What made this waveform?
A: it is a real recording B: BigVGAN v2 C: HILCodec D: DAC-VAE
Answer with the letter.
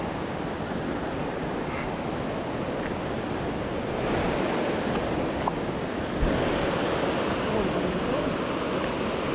A